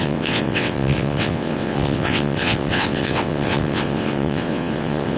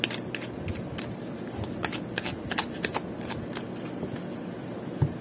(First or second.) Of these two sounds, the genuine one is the second